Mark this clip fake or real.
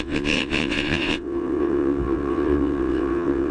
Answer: fake